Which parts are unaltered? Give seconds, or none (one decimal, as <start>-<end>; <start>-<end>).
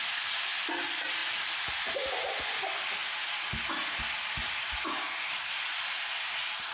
0.0-6.7